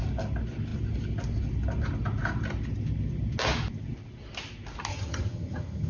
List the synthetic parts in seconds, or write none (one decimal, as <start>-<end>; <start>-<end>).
4.9-5.9